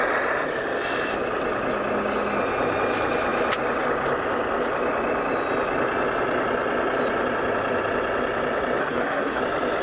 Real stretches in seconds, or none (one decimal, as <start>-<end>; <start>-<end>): 0.0-8.8; 9.4-9.8